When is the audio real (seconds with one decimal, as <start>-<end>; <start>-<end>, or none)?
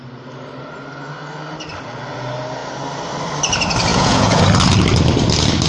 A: 0.0-3.9; 4.4-5.7